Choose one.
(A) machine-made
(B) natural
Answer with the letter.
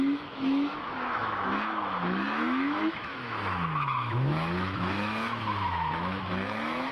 A